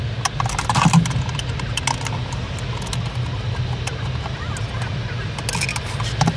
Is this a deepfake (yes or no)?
no